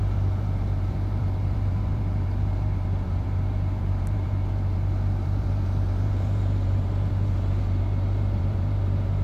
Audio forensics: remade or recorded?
remade